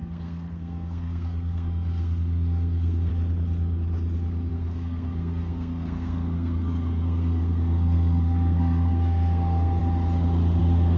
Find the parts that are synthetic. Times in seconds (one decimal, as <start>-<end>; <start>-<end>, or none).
0.0-3.1; 4.5-9.8; 10.6-11.0